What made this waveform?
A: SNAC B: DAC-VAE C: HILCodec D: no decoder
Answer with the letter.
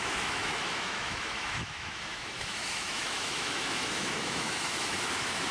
B